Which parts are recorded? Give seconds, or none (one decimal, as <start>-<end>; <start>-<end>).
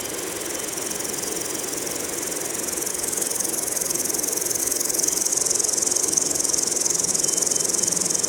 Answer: 0.0-2.9; 4.0-4.6; 5.3-6.0; 7.1-8.3